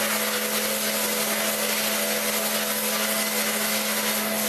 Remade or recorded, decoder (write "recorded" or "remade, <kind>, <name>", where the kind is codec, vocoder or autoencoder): recorded